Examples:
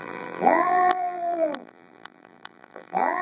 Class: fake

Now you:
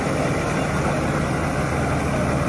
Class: real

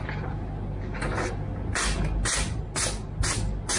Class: real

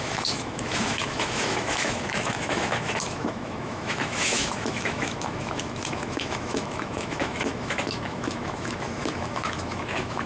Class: fake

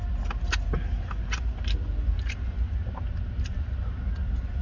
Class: real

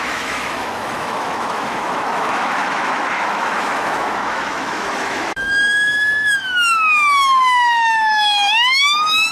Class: fake